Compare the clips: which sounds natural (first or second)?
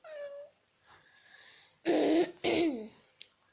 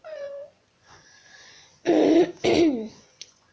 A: first